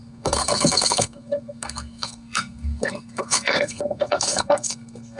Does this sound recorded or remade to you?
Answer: remade